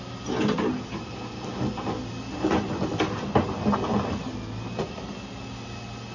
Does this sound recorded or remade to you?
recorded